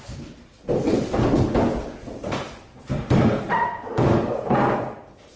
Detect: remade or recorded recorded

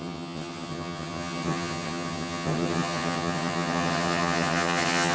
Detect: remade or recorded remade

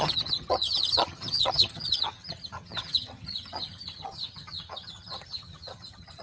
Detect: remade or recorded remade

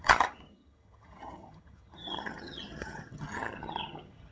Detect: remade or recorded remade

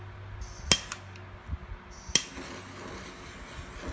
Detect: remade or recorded recorded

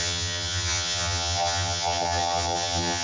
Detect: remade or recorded remade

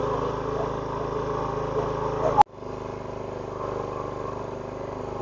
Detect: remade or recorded recorded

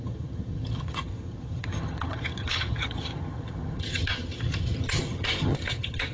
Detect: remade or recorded remade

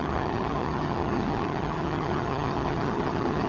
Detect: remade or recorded remade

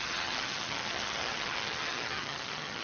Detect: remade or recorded remade